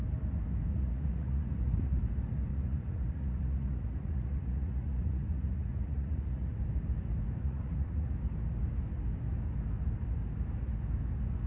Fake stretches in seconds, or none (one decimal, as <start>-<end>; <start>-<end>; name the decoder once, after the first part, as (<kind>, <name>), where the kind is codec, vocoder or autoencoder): 0.7-2.0 (vocoder, Vocos); 2.5-6.6; 7.4-8.1